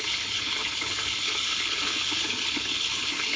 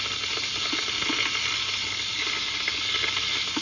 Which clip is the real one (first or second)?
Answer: second